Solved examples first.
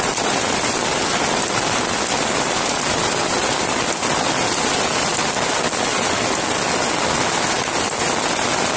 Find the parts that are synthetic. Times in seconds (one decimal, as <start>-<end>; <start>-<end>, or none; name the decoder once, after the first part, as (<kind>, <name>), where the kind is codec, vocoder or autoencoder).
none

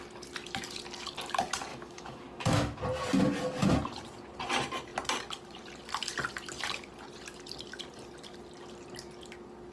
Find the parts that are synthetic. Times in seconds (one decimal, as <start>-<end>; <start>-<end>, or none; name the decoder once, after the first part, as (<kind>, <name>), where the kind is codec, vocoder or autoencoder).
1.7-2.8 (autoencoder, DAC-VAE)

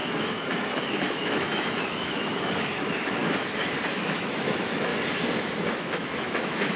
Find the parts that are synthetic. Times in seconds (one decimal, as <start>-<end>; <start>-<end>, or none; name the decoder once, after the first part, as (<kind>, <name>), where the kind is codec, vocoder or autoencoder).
0.0-3.2 (autoencoder, DAC-VAE); 3.9-4.9; 5.6-6.8

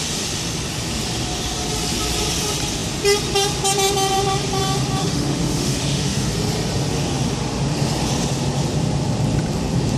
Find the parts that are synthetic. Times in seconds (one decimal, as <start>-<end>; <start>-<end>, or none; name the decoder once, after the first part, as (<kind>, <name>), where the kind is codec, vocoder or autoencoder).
5.0-6.3 (autoencoder, DAC-VAE)

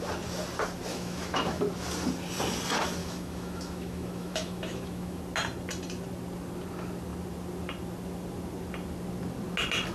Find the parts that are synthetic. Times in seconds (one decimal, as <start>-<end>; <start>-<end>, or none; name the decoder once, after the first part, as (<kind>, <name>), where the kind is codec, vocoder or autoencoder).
0.9-1.6 (autoencoder, DAC-VAE); 3.0-5.2